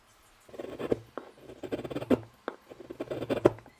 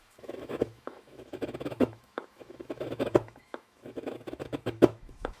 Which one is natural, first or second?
first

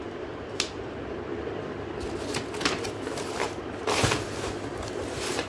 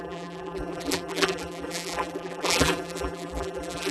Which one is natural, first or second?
first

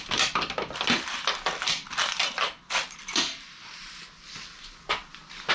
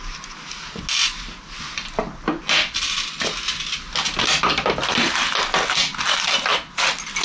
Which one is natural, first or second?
second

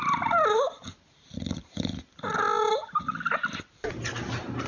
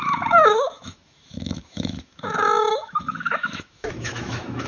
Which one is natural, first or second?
first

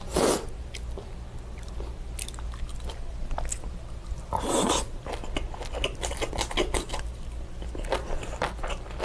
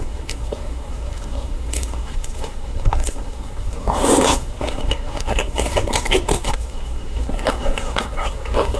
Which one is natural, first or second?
first